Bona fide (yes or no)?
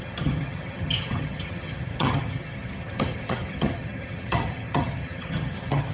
no